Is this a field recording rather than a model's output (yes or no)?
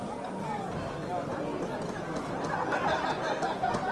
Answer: yes